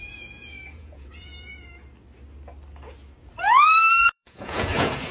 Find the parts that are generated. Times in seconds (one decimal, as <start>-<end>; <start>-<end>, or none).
0.0-1.5; 4.0-5.1